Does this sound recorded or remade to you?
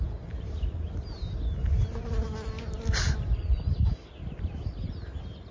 recorded